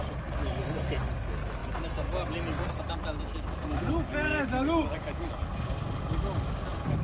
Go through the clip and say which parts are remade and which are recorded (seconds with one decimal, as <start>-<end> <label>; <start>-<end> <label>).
0.0-7.0 recorded